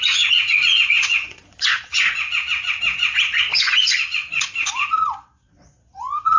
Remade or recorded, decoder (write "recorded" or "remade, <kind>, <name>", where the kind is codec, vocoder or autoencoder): remade, vocoder, Vocos